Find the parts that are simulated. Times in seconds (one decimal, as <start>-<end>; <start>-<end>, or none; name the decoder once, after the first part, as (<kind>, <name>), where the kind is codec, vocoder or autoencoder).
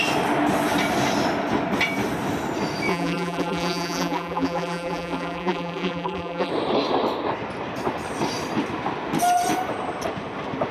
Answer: 2.9-6.5 (vocoder, BigVGAN v2)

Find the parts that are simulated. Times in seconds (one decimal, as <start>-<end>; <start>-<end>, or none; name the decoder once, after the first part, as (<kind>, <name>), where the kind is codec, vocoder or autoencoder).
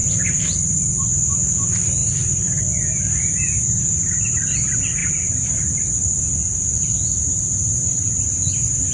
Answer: 0.0-0.8 (vocoder, BigVGAN v2); 2.0-2.6; 5.0-5.6; 7.6-8.5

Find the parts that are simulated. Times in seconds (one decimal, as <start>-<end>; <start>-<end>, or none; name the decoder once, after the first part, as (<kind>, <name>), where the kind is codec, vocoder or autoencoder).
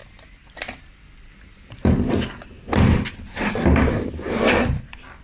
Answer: 0.0-5.2 (vocoder, BigVGAN v2)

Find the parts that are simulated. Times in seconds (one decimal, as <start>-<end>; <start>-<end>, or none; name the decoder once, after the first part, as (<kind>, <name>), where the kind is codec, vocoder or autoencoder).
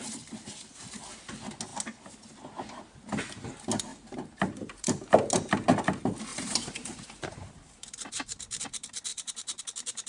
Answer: 3.9-5.1 (vocoder, BigVGAN v2); 6.3-8.6; 9.1-9.6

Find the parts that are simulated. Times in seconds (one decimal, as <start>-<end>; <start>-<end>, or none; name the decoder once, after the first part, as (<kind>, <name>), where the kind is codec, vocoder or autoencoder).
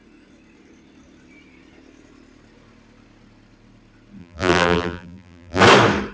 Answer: 4.2-5.6 (vocoder, BigVGAN v2)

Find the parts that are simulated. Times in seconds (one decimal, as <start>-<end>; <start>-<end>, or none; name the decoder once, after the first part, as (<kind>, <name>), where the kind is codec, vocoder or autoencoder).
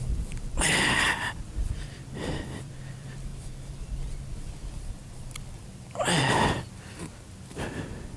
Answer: 0.0-8.2 (vocoder, BigVGAN v2)